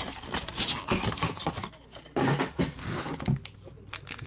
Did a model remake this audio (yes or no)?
no